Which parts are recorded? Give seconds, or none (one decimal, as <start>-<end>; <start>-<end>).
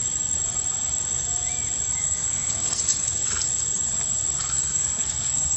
0.0-2.0; 3.1-4.4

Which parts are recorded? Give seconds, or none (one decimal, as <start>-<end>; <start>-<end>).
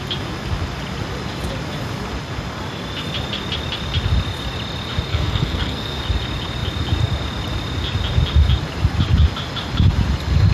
0.0-5.1; 6.0-10.5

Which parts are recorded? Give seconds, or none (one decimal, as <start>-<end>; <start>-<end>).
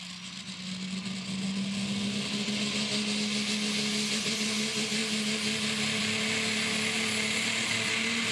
0.0-8.3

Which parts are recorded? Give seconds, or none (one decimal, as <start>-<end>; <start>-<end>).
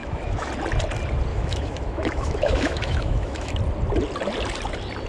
0.5-1.3; 3.5-5.1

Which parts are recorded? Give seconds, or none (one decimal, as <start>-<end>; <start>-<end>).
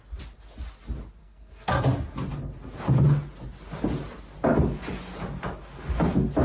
0.0-1.2; 1.8-6.4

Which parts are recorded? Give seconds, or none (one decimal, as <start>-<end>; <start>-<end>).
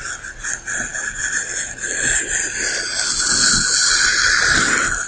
0.0-5.1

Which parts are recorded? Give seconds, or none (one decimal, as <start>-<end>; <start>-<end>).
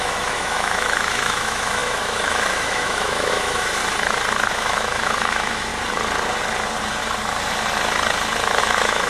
3.8-4.5; 5.7-8.6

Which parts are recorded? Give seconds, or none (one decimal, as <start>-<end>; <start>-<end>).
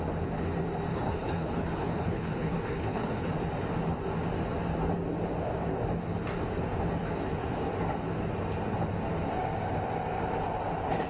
0.0-0.9; 3.3-11.1